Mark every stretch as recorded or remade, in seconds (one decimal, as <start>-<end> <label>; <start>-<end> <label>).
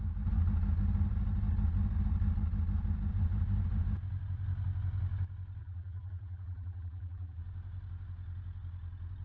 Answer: 0.0-5.6 recorded; 5.6-7.4 remade; 7.4-9.2 recorded